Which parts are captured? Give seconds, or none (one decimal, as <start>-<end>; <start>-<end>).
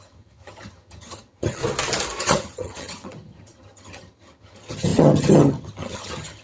1.6-2.2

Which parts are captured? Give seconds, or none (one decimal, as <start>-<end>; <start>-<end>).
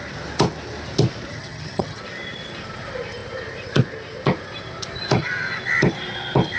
0.0-1.3; 2.0-6.6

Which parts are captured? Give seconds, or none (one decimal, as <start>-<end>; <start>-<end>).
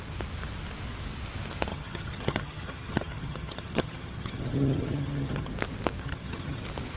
0.0-1.7; 5.5-6.0; 6.6-7.0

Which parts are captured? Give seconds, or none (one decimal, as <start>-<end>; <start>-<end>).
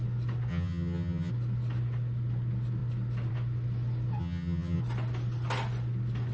0.0-0.5; 1.3-4.2; 4.8-6.3